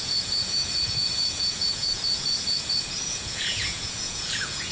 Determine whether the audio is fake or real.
fake